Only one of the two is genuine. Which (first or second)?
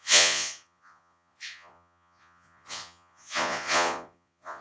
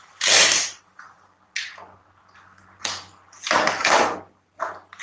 second